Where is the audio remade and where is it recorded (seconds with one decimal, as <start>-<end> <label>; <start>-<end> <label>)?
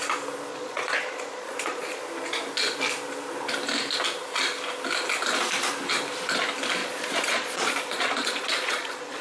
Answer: 0.0-0.5 recorded; 0.5-2.0 remade; 2.0-6.8 recorded; 6.8-9.2 remade